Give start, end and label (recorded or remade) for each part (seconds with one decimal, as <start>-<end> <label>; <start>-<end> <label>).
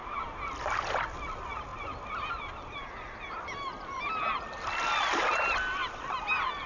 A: 0.0-1.7 recorded; 1.7-4.0 remade; 4.0-5.8 recorded; 5.8-6.7 remade